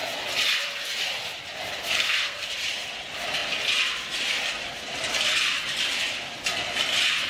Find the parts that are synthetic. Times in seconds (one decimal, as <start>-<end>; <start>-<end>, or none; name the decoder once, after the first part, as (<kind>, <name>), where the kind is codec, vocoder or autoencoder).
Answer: 1.8-2.5 (codec, SNAC)